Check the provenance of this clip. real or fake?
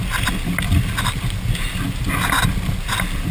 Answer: real